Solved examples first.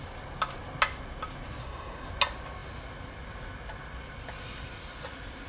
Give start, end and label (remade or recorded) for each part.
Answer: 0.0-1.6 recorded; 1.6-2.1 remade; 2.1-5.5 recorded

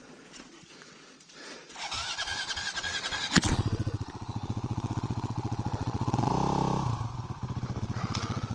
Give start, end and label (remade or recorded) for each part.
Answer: 0.0-6.3 remade; 6.3-7.8 recorded; 7.8-8.5 remade

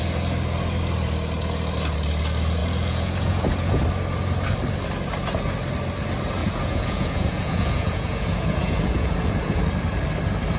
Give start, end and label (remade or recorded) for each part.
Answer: 0.0-2.6 recorded; 2.6-3.8 remade; 3.8-6.4 recorded; 6.4-9.6 remade; 9.6-10.6 recorded

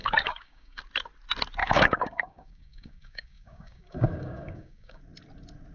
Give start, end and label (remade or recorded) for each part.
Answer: 0.0-0.8 remade; 0.8-1.6 recorded; 1.6-5.0 remade; 5.0-5.7 recorded

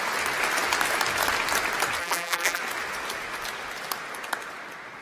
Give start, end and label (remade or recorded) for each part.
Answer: 0.0-2.0 recorded; 2.0-2.6 remade; 2.6-5.0 recorded

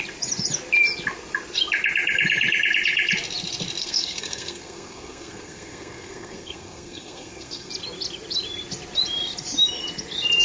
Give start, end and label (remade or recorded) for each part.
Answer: 0.0-3.8 recorded; 3.8-7.7 remade; 7.7-10.4 recorded

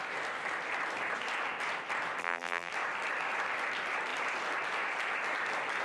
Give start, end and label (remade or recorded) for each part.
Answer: 0.0-2.2 recorded; 2.2-2.7 remade; 2.7-5.8 recorded